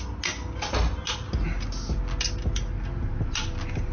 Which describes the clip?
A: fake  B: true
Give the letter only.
B